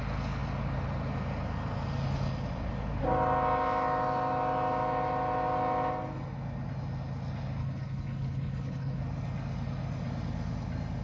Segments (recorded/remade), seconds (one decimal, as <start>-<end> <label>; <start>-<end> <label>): 0.0-7.6 recorded; 7.6-9.0 remade; 9.0-11.0 recorded